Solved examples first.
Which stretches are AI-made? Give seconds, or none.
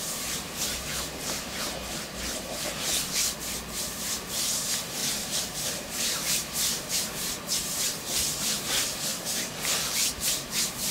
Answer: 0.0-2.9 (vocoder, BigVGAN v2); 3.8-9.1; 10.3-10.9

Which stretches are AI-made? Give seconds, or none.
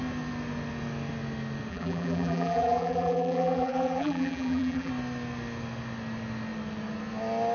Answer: 1.7-4.9 (vocoder, BigVGAN v2)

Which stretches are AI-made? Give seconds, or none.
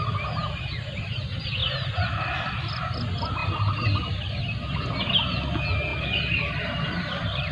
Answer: 0.4-1.2 (vocoder, BigVGAN v2); 1.6-2.7; 5.9-7.5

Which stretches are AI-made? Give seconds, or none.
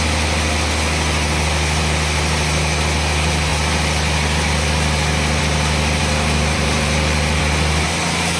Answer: 6.0-7.4 (vocoder, BigVGAN v2)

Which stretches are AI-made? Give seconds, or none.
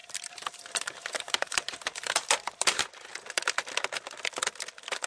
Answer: 0.0-3.1 (vocoder, BigVGAN v2)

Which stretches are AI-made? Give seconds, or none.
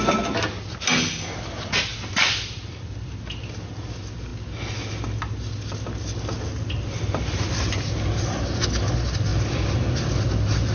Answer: 1.9-3.1 (vocoder, BigVGAN v2)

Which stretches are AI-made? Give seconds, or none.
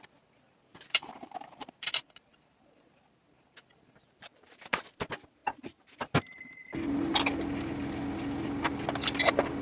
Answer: 0.7-1.3 (vocoder, BigVGAN v2); 4.3-4.8